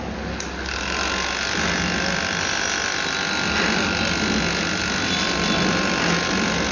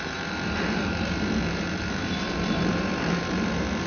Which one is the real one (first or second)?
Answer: first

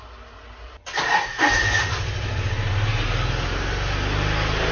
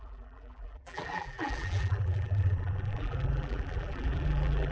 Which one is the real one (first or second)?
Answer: first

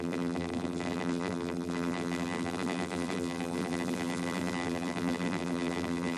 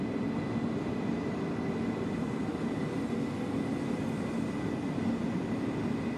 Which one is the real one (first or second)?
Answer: second